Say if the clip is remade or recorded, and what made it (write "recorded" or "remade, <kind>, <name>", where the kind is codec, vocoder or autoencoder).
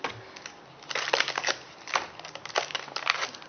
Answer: recorded